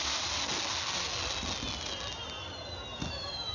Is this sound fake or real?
real